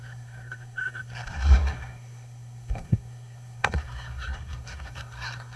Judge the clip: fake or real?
fake